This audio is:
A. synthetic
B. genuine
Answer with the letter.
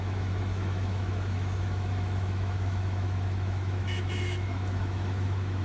A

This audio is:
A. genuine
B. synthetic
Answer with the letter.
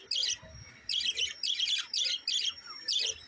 A